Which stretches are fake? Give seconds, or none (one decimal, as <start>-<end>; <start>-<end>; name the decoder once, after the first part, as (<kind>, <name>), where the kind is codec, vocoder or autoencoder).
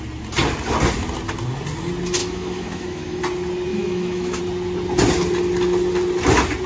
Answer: 2.2-3.2 (autoencoder, DAC-VAE); 3.7-4.4